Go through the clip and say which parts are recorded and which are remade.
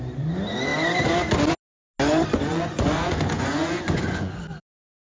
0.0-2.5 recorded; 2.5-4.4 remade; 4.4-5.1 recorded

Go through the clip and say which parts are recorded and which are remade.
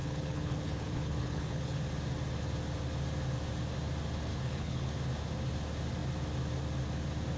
0.0-1.8 remade; 1.8-4.3 recorded; 4.3-4.9 remade; 4.9-7.4 recorded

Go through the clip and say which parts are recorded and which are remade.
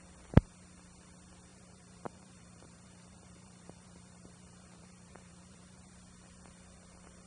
0.0-1.5 recorded; 1.5-5.9 remade; 5.9-7.3 recorded